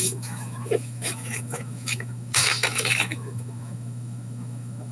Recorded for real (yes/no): no